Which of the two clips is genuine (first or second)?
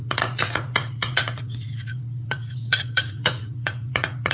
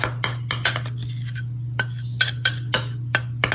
second